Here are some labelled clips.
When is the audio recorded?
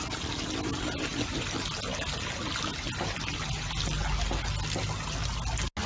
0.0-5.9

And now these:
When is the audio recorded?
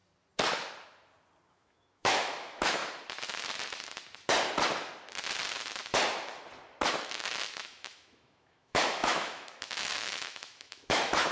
0.0-1.5; 2.8-7.0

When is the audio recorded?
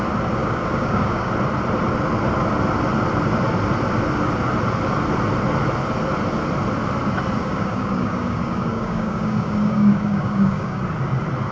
0.0-0.4; 1.3-7.4; 10.8-11.5